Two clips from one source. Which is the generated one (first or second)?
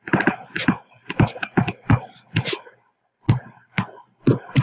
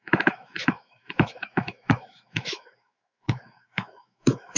second